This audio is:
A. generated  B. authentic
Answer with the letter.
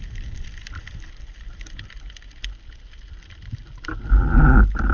A